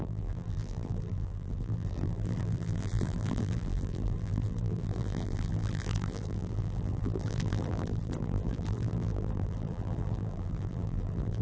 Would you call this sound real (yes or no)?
no